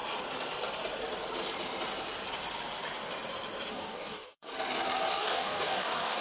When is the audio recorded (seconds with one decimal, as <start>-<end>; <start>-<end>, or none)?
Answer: 0.0-3.7; 4.5-5.2